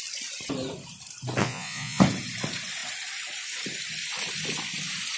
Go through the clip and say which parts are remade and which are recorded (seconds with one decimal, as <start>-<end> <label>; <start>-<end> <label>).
0.0-1.4 recorded; 1.4-2.0 remade; 2.0-5.2 recorded

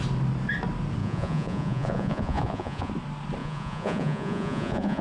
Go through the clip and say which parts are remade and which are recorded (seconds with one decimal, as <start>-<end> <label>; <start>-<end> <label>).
0.0-1.0 recorded; 1.0-2.9 remade; 2.9-3.4 recorded; 3.4-5.0 remade

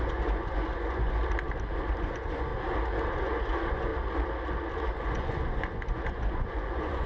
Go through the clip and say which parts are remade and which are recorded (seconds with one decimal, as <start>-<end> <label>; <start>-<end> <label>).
0.0-1.2 remade; 1.2-1.9 recorded; 1.9-2.5 remade; 2.5-3.1 recorded; 3.1-3.9 remade; 3.9-5.0 recorded; 5.0-7.1 remade

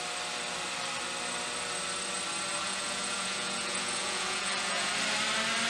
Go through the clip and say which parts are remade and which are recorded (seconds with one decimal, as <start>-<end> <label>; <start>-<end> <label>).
0.0-2.6 recorded; 2.6-4.9 remade; 4.9-5.7 recorded

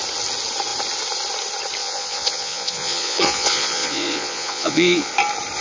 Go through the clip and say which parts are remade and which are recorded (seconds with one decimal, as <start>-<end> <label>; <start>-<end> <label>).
0.0-1.8 recorded; 1.8-5.1 remade; 5.1-5.6 recorded

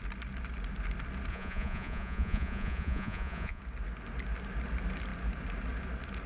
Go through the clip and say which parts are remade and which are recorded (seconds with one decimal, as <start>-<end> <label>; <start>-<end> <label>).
0.0-1.3 recorded; 1.3-3.6 remade; 3.6-6.3 recorded

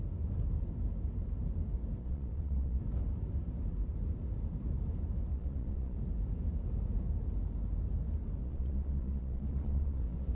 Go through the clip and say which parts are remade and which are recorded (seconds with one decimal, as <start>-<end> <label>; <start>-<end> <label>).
0.0-2.0 recorded; 2.0-2.8 remade; 2.8-5.3 recorded; 5.3-6.0 remade; 6.0-8.4 recorded; 8.4-10.3 remade

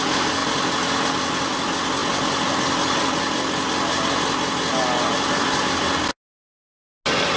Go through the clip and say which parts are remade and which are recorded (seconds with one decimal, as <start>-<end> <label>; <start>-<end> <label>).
0.0-7.4 recorded